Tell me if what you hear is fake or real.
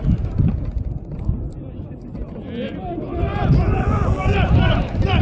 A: real